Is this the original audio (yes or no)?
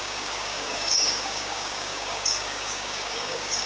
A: no